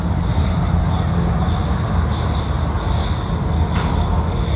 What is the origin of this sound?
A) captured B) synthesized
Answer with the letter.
A